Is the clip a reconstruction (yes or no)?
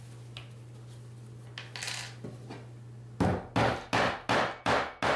no